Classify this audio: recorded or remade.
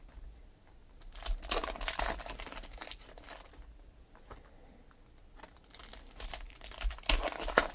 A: recorded